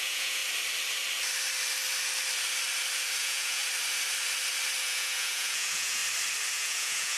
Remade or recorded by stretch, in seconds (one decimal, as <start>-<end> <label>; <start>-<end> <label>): 0.0-0.4 remade; 0.4-3.2 recorded; 3.2-3.6 remade; 3.6-4.8 recorded; 4.8-6.0 remade; 6.0-6.5 recorded; 6.5-7.2 remade